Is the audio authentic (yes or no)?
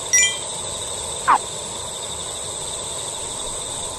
yes